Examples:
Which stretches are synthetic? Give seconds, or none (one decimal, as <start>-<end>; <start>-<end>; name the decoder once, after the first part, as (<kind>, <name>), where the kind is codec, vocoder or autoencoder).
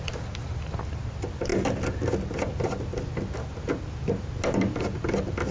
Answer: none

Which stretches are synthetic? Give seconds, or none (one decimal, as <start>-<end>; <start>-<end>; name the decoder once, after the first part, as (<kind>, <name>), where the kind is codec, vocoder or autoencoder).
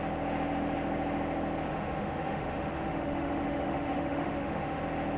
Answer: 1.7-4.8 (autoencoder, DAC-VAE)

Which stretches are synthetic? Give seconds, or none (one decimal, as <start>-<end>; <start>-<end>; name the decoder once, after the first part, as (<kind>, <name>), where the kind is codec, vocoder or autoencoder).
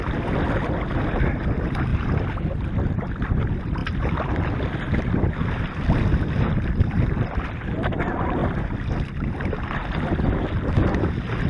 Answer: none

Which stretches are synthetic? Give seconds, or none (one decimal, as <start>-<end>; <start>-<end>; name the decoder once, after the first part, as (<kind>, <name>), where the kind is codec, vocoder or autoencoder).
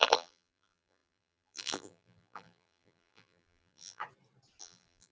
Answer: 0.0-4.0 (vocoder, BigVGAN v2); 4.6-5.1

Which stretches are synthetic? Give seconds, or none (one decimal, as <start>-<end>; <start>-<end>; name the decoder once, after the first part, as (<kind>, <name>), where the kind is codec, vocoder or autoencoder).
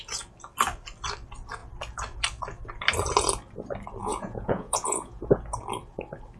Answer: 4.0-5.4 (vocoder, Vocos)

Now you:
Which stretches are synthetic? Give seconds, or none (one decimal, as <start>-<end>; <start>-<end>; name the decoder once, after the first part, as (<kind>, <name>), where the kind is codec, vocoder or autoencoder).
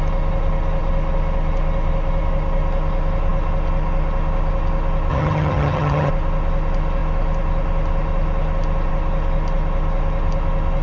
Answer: 5.1-6.1 (vocoder, HiFi-GAN)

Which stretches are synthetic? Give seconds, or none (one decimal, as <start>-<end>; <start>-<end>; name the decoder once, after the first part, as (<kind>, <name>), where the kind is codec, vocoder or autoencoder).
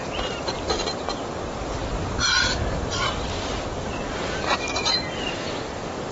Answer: 0.0-1.2 (vocoder, BigVGAN v2); 1.8-5.5